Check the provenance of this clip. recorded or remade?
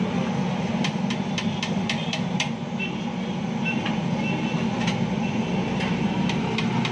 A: recorded